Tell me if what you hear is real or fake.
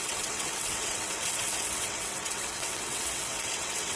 fake